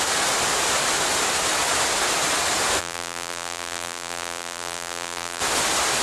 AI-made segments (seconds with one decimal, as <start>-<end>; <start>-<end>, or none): 2.8-5.4